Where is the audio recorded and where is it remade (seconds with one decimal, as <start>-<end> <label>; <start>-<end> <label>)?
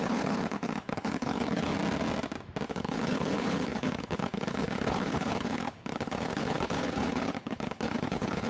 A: 0.0-1.7 remade; 1.7-2.7 recorded; 2.7-8.5 remade